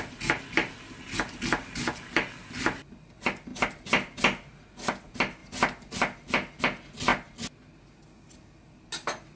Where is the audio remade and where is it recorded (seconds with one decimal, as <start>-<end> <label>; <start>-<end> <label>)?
0.0-9.4 recorded